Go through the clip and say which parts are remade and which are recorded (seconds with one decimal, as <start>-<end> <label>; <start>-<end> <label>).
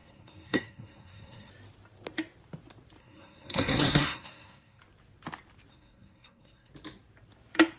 0.0-1.5 remade; 1.5-3.0 recorded; 3.0-4.8 remade; 4.8-5.7 recorded; 5.7-6.7 remade; 6.7-7.8 recorded